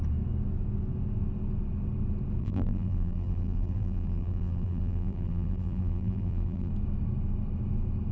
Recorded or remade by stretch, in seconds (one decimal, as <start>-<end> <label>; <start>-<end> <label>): 0.0-2.4 recorded; 2.4-6.7 remade; 6.7-8.1 recorded